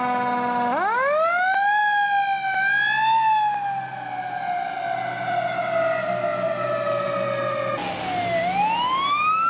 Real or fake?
real